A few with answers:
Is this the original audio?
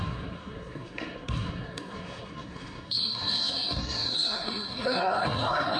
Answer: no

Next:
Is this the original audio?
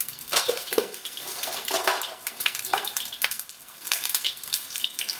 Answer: no